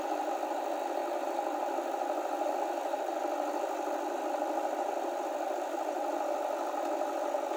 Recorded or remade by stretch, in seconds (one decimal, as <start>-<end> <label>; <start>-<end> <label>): 0.0-7.6 recorded